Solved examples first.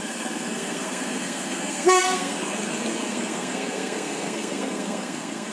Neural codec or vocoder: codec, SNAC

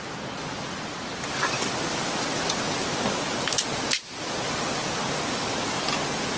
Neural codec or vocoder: none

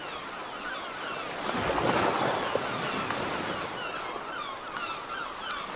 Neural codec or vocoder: none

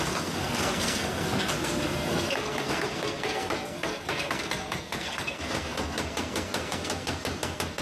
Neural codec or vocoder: codec, SNAC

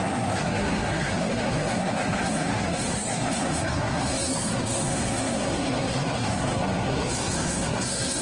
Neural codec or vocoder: codec, SNAC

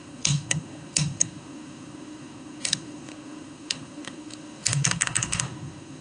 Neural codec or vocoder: codec, SNAC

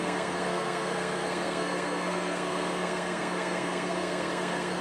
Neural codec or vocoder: codec, SNAC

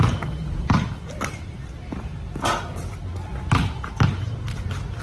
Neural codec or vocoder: none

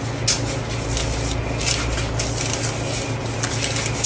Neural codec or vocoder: none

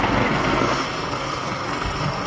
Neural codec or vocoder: codec, SNAC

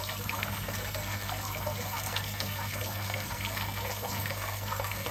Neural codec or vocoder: codec, SNAC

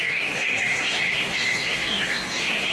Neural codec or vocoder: codec, SNAC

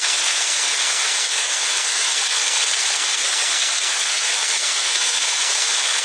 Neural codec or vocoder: codec, SNAC